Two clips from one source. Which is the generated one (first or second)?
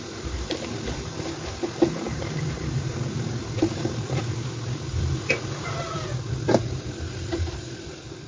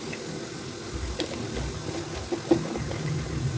first